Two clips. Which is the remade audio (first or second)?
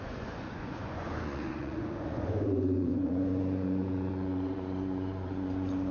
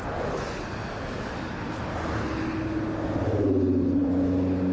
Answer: first